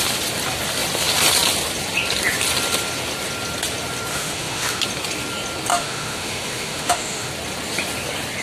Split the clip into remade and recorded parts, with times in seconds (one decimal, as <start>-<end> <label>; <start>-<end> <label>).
0.0-4.1 recorded; 4.1-4.8 remade; 4.8-5.7 recorded; 5.7-7.3 remade; 7.3-8.4 recorded